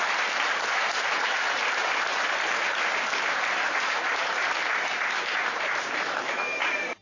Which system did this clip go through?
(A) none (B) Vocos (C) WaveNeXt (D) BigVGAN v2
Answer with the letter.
D